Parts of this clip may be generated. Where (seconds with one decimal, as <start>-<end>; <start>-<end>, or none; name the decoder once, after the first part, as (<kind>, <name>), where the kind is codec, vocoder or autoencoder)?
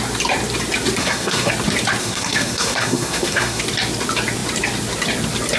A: 1.0-1.5 (codec, SNAC); 2.0-3.6